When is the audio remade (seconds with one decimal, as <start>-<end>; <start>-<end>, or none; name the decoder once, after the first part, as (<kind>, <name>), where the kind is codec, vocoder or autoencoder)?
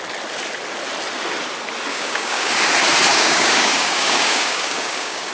1.9-2.5 (codec, DAC); 3.1-5.3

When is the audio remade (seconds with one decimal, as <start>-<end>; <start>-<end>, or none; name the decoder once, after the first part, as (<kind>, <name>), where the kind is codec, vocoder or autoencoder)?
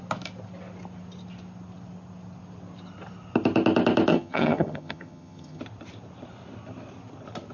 4.1-5.6 (vocoder, HiFi-GAN)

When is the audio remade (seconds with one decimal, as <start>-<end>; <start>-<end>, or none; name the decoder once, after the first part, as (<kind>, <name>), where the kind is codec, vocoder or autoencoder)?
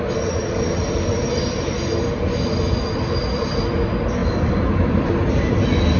0.4-1.4 (vocoder, BigVGAN v2); 4.2-5.6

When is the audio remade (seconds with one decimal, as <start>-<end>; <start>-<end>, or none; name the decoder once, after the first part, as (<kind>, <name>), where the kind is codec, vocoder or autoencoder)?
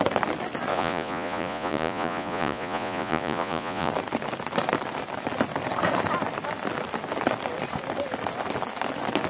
0.7-3.9 (vocoder, Vocos)